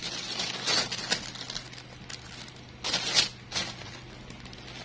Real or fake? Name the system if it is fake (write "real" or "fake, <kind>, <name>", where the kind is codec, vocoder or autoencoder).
real